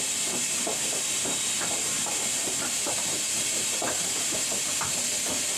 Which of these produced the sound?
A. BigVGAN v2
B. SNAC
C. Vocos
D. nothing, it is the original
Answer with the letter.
A